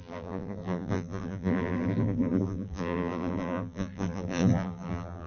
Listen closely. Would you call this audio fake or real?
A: fake